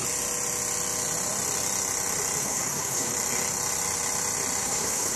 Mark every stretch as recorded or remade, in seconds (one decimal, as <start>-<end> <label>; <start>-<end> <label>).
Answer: 0.0-2.4 recorded; 2.4-3.1 remade; 3.1-4.6 recorded; 4.6-5.2 remade

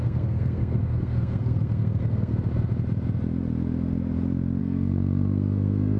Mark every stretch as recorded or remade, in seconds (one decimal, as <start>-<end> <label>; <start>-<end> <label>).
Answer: 0.0-2.3 remade; 2.3-4.6 recorded; 4.6-6.0 remade

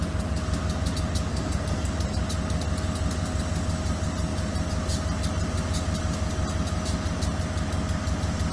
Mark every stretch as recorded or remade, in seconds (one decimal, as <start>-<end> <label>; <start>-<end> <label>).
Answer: 0.0-1.3 recorded; 1.3-1.9 remade; 1.9-8.5 recorded

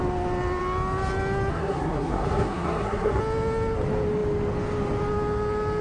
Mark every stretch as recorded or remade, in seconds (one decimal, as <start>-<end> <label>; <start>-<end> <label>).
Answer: 0.0-1.5 recorded; 1.5-3.2 remade; 3.2-5.8 recorded